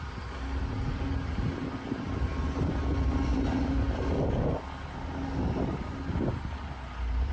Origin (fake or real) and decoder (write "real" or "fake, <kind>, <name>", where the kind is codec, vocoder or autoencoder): real